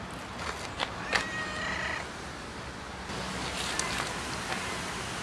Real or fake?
real